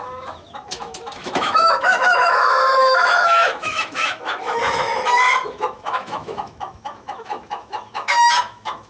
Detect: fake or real fake